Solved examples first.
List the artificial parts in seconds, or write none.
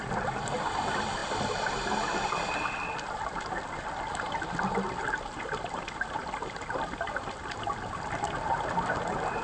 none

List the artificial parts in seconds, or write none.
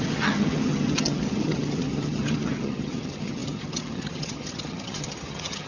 0.0-5.7 (vocoder, HiFi-GAN)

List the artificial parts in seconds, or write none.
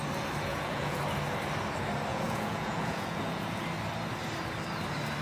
0.5-1.0 (vocoder, Vocos); 2.1-3.6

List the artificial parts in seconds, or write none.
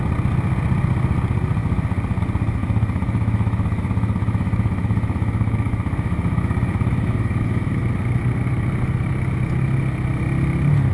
2.6-7.8 (autoencoder, DAC-VAE)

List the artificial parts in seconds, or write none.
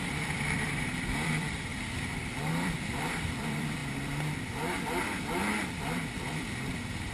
0.0-3.8 (vocoder, BigVGAN v2); 6.2-7.1